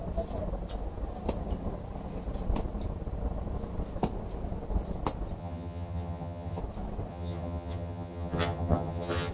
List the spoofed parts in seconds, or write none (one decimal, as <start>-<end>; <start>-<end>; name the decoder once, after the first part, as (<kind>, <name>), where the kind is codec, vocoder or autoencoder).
5.4-6.6 (vocoder, HiFi-GAN); 7.1-9.3